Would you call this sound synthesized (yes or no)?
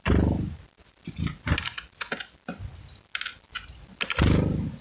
no